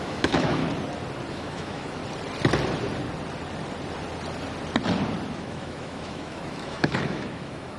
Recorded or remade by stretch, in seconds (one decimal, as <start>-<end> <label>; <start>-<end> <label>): 0.0-0.6 remade; 0.6-1.3 recorded; 1.3-2.0 remade; 2.0-5.3 recorded; 5.3-7.8 remade